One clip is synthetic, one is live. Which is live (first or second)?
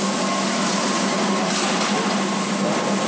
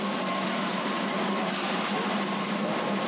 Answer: first